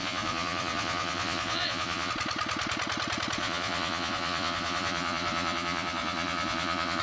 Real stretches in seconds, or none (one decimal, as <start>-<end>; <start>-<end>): 2.1-3.4